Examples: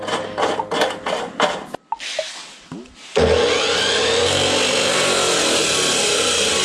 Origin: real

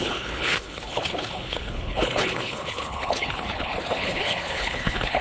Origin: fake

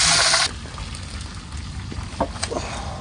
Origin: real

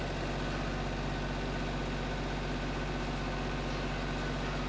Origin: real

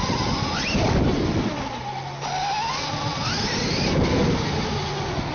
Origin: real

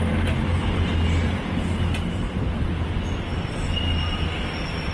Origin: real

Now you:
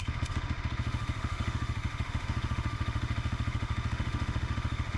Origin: fake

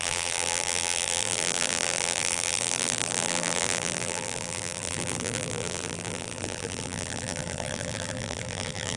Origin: fake